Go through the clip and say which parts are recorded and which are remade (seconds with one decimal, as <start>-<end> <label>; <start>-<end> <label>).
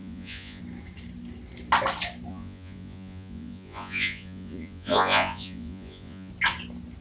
0.0-0.6 remade; 0.6-2.3 recorded; 2.3-6.3 remade; 6.3-7.0 recorded